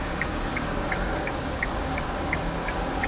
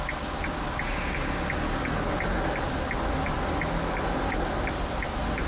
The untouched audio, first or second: second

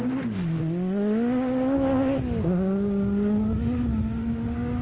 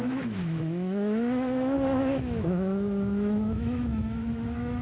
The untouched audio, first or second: first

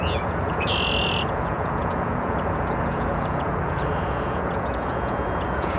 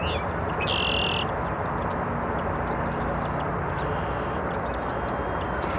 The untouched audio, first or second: second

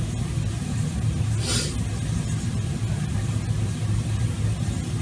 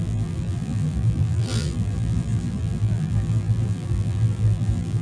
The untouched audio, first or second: first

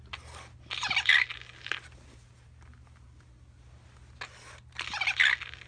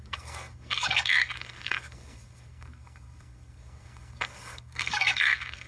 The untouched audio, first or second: first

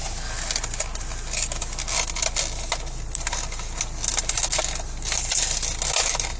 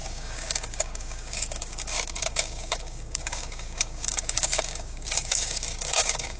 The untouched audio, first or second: first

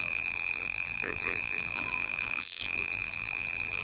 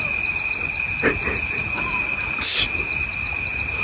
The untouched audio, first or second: second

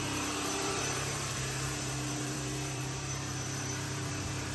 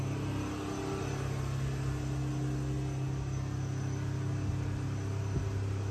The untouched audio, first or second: second